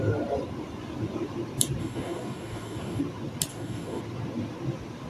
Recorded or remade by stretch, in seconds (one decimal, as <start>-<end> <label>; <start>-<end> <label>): 0.0-1.8 recorded; 1.8-3.0 remade; 3.0-3.5 recorded; 3.5-4.0 remade; 4.0-5.1 recorded